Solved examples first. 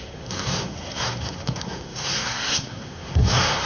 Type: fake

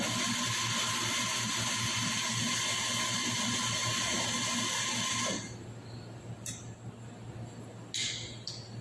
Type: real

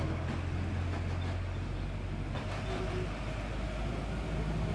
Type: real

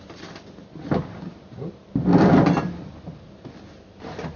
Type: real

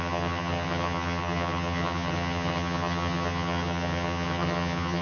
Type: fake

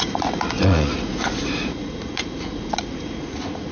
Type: fake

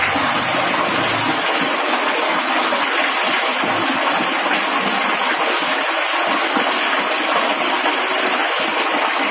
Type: real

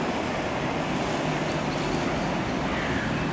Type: real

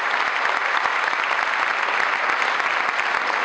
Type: real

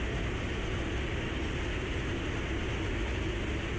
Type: real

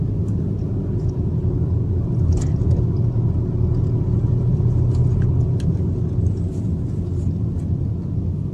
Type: real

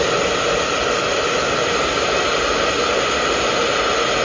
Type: real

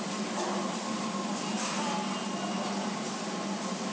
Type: real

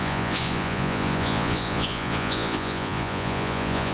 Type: fake